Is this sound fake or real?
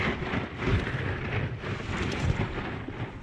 real